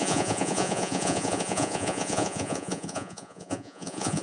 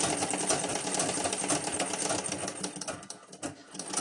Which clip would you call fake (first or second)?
first